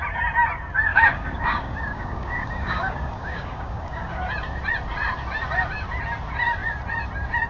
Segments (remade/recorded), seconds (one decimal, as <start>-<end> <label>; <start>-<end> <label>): 0.0-0.9 recorded; 0.9-4.2 remade; 4.2-7.5 recorded